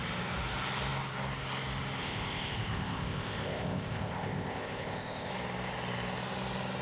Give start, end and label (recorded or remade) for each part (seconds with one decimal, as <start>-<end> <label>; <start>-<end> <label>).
0.0-2.0 recorded; 2.0-5.3 remade; 5.3-6.8 recorded